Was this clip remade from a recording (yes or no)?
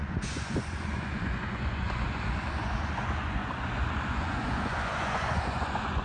yes